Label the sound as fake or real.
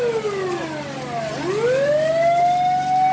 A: real